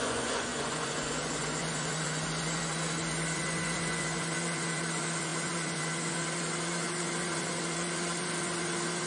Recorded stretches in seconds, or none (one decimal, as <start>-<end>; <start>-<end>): none